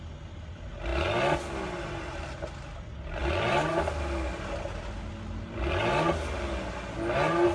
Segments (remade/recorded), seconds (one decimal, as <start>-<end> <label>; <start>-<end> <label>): 0.0-7.5 recorded